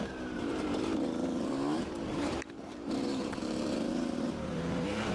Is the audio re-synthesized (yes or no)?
yes